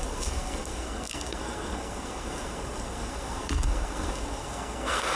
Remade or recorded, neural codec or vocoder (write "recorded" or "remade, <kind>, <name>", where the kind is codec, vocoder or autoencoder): remade, codec, SNAC